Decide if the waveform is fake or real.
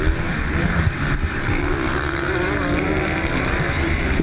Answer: fake